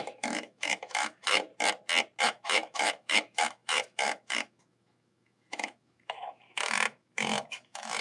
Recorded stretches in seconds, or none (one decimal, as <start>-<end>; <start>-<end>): 1.5-2.2